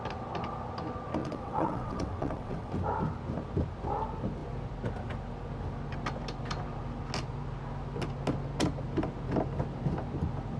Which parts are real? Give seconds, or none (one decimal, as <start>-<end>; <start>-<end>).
0.0-1.2; 2.7-10.6